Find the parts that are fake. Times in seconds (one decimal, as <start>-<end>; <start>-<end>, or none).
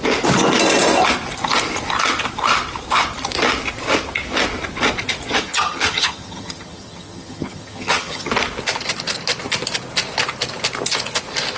5.4-8.3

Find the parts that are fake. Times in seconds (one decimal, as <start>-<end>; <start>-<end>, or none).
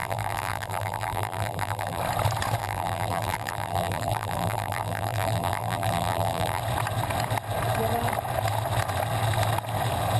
0.0-2.0; 2.6-6.6